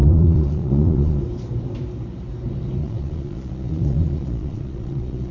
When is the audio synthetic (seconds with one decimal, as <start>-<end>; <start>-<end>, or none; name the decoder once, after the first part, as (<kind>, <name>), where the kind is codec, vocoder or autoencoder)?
0.0-1.2 (vocoder, Vocos); 2.8-5.3